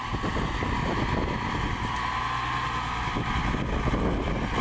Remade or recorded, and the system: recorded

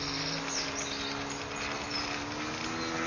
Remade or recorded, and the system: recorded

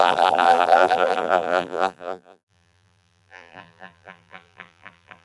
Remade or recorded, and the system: remade, vocoder, BigVGAN v2